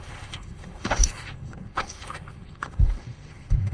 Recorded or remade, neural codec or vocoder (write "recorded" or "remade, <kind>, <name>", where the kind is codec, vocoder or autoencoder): remade, autoencoder, DAC-VAE